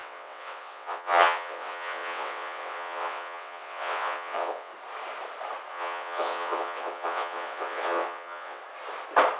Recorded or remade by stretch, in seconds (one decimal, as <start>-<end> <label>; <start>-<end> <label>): 0.0-4.7 remade; 4.7-5.7 recorded; 5.7-8.6 remade; 8.6-9.4 recorded